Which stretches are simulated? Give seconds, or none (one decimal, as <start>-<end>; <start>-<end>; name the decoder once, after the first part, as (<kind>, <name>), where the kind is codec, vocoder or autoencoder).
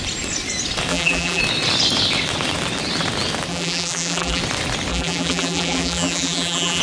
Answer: 0.9-1.4 (vocoder, BigVGAN v2); 3.5-4.4; 4.9-6.8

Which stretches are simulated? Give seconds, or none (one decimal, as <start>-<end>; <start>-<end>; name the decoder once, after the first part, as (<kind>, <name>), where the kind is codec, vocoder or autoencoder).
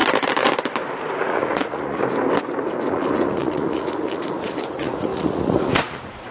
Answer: 1.2-2.0 (vocoder, Vocos); 2.9-6.3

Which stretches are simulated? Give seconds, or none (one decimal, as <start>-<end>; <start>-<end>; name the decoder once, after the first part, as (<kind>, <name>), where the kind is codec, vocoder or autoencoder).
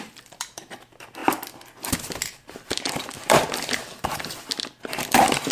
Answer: none